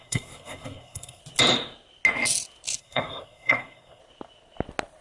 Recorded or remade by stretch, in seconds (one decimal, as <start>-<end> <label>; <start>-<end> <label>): 0.0-1.2 remade; 1.2-2.8 recorded; 2.8-4.0 remade; 4.0-5.0 recorded